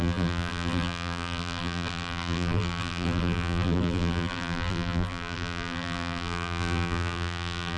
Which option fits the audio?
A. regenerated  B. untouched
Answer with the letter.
A